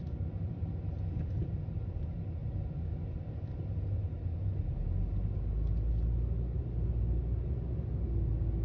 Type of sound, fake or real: real